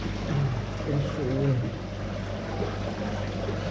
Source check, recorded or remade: recorded